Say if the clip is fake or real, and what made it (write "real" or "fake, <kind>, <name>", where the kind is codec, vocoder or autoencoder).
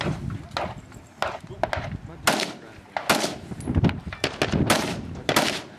real